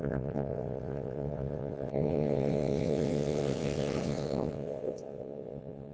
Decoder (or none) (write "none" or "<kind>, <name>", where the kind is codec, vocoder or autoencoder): vocoder, WaveNeXt